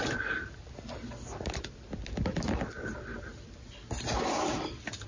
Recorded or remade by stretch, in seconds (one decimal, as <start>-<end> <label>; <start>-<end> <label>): 0.0-5.1 recorded